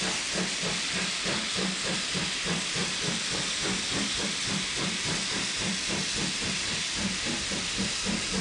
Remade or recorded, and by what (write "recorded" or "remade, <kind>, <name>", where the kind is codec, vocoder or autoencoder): remade, vocoder, BigVGAN v2